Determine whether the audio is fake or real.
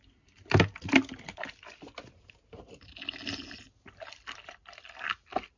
real